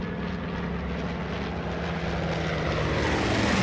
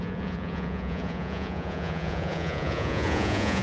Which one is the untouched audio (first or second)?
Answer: first